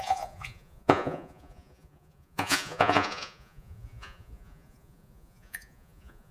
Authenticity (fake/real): fake